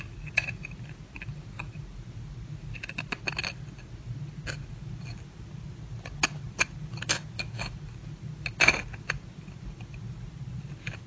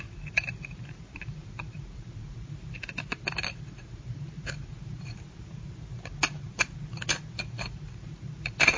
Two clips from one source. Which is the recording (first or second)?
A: first